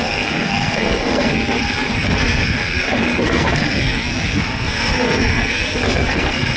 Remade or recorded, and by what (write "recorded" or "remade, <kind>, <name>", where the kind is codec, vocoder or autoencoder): remade, codec, SNAC